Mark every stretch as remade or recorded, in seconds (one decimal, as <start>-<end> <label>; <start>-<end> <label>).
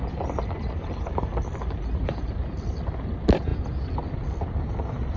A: 0.0-5.2 recorded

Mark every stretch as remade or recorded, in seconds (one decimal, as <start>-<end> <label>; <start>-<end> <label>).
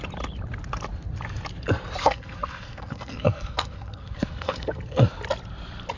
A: 0.0-2.0 recorded; 2.0-5.1 remade; 5.1-6.0 recorded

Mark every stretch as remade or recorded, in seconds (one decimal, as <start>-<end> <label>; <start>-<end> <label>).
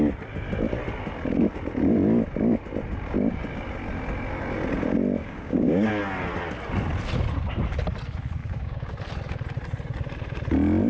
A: 0.0-5.2 recorded; 5.2-5.9 remade; 5.9-8.4 recorded; 8.4-9.0 remade; 9.0-10.9 recorded